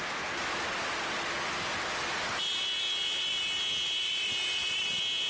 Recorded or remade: recorded